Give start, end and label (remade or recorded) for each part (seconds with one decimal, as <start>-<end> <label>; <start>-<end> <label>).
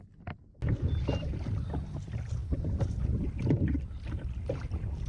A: 0.0-5.1 recorded